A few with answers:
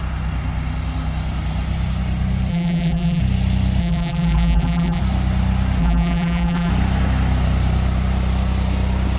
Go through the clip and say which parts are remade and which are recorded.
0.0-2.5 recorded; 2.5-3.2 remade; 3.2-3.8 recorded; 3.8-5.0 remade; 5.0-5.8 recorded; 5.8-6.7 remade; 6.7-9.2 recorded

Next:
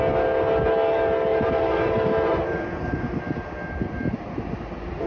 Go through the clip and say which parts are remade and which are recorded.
0.0-1.3 recorded; 1.3-3.2 remade; 3.2-5.1 recorded

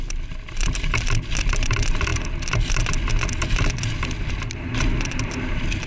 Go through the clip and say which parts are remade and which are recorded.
0.0-5.9 remade

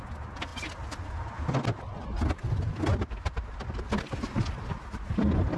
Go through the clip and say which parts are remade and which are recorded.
0.0-5.6 recorded

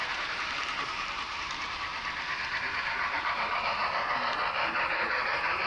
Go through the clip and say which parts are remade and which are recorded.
0.0-1.9 remade; 1.9-2.7 recorded; 2.7-3.8 remade; 3.8-4.8 recorded; 4.8-5.7 remade

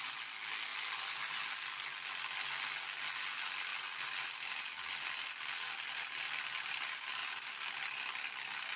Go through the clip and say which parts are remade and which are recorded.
0.0-0.7 recorded; 0.7-1.5 remade; 1.5-8.8 recorded